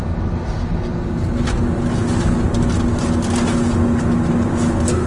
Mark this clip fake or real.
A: real